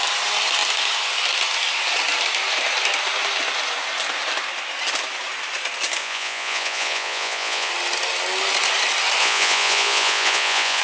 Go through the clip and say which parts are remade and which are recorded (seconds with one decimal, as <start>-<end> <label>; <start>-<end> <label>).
0.0-6.0 recorded; 6.0-7.7 remade; 7.7-9.2 recorded; 9.2-10.8 remade